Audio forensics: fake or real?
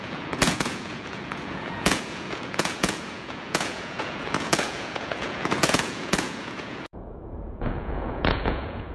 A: fake